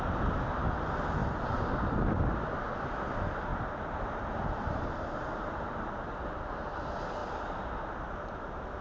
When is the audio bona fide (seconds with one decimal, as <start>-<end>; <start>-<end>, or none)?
0.0-1.2; 1.7-3.5; 6.6-8.8